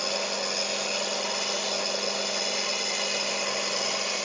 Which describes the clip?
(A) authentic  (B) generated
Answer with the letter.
A